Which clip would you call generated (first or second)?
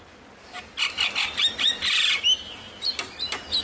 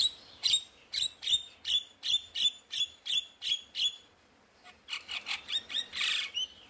second